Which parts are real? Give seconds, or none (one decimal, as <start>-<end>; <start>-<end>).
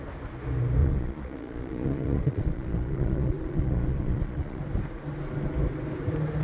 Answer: 0.0-0.8; 4.6-6.4